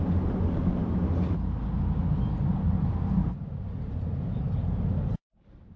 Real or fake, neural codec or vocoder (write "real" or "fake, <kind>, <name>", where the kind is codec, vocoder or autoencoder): real